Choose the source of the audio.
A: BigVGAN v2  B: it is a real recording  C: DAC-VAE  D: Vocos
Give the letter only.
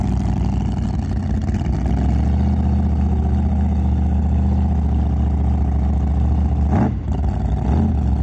B